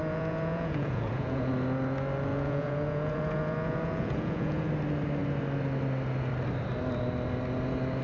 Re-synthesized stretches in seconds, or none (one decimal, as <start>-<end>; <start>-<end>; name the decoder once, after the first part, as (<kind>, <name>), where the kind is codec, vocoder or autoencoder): 0.0-1.5 (vocoder, Vocos); 2.3-4.7